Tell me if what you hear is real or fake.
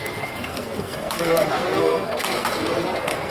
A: fake